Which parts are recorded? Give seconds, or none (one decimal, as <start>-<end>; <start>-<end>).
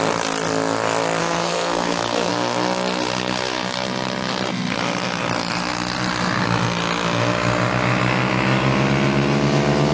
0.0-1.2; 2.3-9.9